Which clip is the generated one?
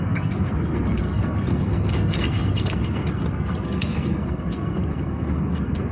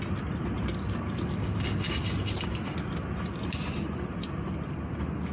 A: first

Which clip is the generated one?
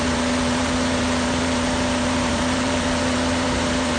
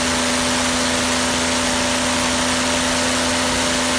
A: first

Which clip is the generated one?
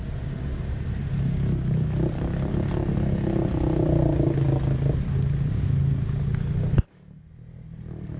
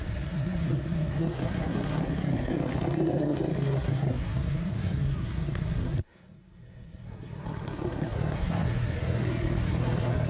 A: second